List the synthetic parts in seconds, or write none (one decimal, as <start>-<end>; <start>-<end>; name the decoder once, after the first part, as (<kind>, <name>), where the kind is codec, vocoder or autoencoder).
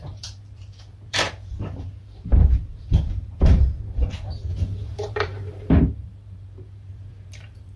0.0-7.8 (vocoder, BigVGAN v2)